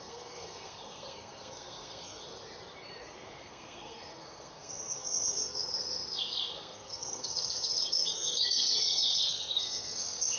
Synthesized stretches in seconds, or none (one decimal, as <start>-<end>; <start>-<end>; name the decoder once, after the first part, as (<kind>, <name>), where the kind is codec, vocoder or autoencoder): 0.0-2.2 (codec, SNAC); 3.0-10.4